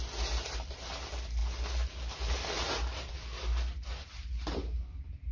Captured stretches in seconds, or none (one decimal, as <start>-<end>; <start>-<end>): 0.0-5.3